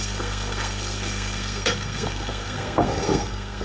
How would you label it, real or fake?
fake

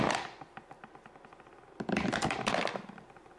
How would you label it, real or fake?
real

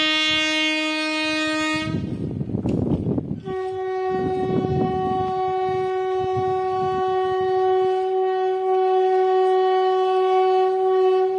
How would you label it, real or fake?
real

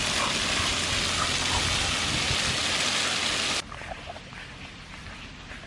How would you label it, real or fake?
real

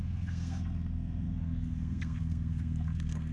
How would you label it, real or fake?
fake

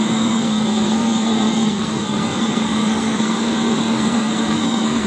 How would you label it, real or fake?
fake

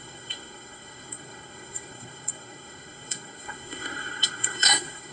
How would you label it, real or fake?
fake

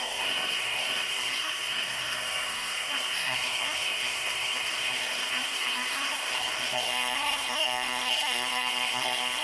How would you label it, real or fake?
fake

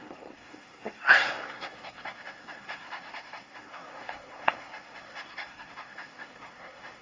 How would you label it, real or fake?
fake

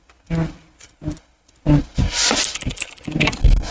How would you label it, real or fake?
real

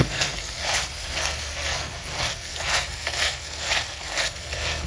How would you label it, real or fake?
fake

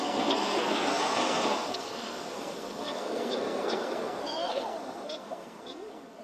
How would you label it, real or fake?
fake